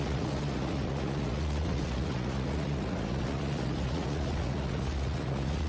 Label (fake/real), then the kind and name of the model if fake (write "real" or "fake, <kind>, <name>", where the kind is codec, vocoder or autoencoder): fake, vocoder, Vocos